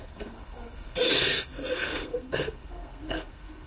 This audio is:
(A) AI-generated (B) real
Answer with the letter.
A